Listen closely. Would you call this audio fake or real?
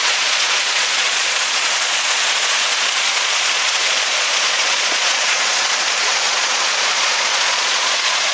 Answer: fake